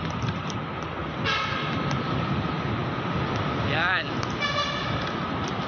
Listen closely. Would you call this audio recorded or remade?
recorded